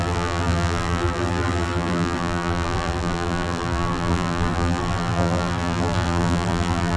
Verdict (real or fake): fake